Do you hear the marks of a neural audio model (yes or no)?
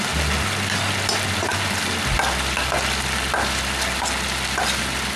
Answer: no